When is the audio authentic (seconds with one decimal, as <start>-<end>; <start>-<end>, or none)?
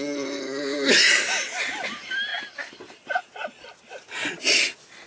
0.0-5.1